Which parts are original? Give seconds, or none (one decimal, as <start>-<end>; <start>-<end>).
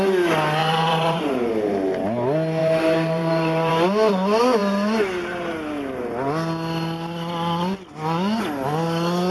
0.0-0.6; 1.3-2.6; 3.7-9.3